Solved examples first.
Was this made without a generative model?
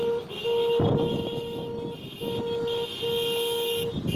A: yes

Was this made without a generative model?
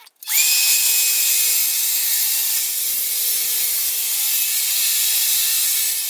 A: no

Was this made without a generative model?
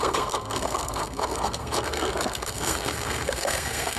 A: no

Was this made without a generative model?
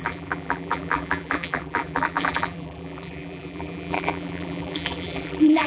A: no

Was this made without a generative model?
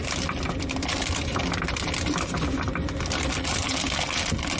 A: yes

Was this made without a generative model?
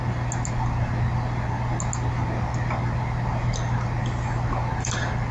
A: yes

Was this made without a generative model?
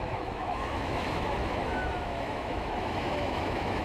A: no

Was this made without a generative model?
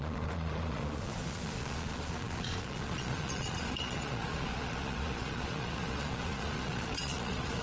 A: no